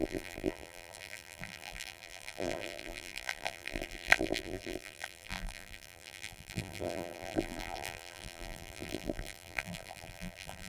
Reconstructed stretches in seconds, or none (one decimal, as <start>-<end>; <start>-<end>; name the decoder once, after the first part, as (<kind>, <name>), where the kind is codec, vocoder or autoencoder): 0.0-10.7 (vocoder, BigVGAN v2)